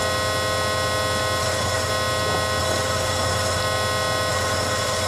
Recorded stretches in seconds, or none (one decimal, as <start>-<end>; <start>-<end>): 0.0-1.4; 1.9-2.6; 3.6-4.3